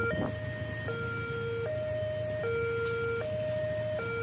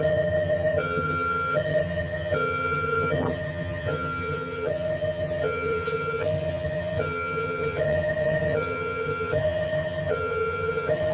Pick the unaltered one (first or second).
first